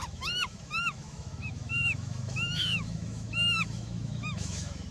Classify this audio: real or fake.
fake